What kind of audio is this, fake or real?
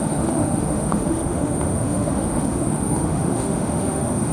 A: fake